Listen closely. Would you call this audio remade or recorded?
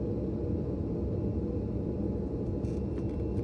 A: recorded